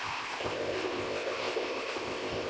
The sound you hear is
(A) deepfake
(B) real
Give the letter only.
A